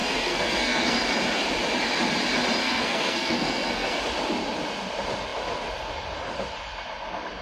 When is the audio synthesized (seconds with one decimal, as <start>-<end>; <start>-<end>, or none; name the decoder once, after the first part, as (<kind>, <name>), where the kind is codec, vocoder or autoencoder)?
0.0-1.1 (codec, SNAC); 2.6-4.0

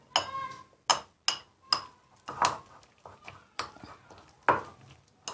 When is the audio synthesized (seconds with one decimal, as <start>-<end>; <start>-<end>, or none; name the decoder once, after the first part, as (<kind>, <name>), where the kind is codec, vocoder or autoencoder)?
none

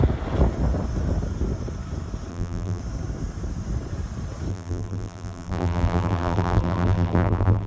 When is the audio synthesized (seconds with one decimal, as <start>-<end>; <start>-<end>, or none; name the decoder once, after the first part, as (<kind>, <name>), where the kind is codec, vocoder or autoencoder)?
2.3-2.8 (vocoder, BigVGAN v2); 4.5-7.7

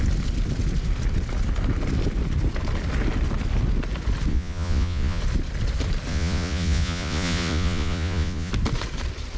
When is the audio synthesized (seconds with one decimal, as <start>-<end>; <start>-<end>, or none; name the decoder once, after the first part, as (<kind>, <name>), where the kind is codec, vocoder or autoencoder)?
4.3-5.2 (vocoder, Vocos); 6.1-8.5

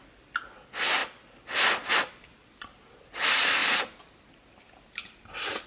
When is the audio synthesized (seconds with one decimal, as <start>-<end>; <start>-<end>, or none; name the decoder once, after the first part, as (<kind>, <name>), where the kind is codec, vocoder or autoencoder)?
0.0-1.0 (vocoder, BigVGAN v2); 1.9-5.7